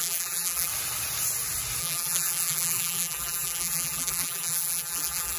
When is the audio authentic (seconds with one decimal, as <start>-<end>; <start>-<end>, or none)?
0.7-1.8